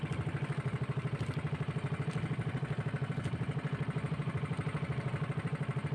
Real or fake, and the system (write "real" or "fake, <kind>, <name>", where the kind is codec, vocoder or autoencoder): real